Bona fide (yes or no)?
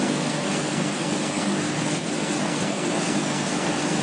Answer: no